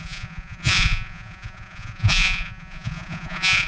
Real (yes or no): no